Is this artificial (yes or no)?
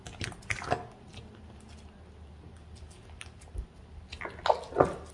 no